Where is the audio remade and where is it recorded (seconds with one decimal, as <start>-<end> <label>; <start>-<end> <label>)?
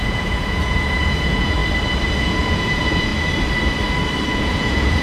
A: 0.0-1.6 remade; 1.6-2.2 recorded; 2.2-3.1 remade; 3.1-4.3 recorded; 4.3-5.0 remade